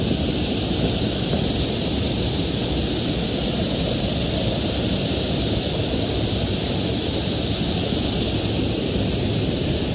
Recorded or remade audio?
recorded